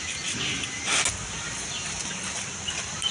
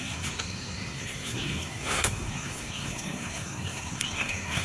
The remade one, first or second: second